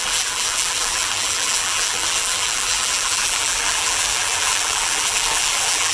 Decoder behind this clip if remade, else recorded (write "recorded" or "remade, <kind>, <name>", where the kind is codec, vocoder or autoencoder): remade, vocoder, BigVGAN v2